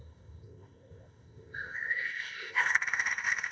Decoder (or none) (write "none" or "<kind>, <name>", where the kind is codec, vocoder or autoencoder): codec, ZipCodec